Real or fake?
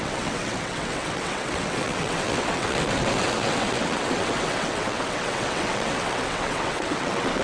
fake